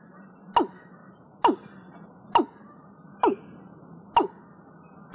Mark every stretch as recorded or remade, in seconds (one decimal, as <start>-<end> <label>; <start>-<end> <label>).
0.0-5.1 recorded